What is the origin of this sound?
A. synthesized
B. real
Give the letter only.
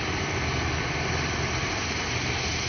B